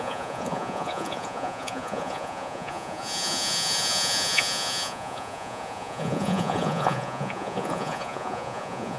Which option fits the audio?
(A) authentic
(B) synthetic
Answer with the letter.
B